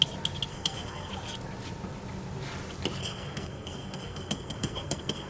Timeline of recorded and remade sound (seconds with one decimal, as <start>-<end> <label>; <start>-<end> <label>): 0.0-0.5 recorded; 0.5-1.1 remade; 1.1-3.0 recorded; 3.0-5.3 remade